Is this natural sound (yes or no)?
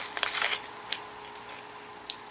yes